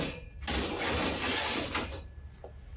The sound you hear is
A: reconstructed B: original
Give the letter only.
B